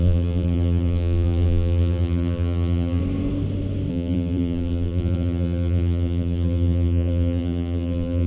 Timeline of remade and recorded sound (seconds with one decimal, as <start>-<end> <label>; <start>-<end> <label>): 0.0-3.0 remade; 3.0-3.9 recorded; 3.9-8.3 remade